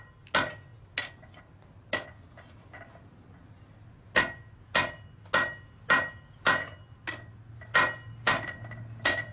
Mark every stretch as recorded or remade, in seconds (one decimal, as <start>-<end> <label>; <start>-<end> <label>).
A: 0.0-9.3 recorded